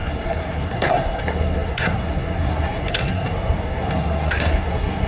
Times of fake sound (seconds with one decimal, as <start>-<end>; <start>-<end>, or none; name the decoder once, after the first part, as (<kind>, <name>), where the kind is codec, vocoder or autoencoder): 0.0-5.1 (codec, SNAC)